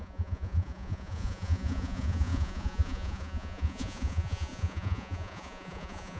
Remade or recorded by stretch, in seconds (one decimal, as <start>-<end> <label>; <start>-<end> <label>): 0.0-6.2 remade